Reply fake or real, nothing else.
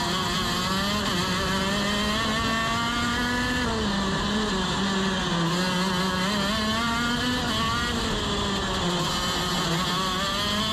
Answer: real